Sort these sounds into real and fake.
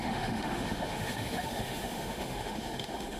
fake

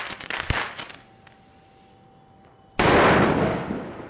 real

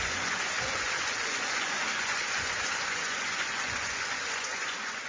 fake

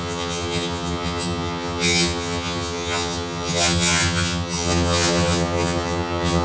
fake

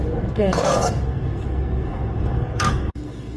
fake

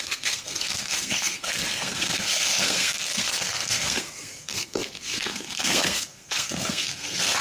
fake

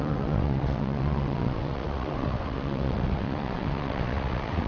fake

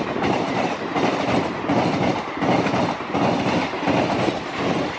real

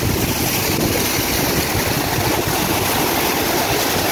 real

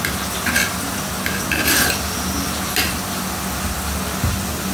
real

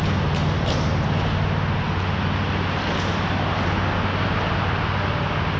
real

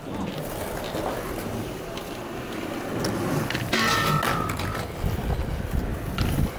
real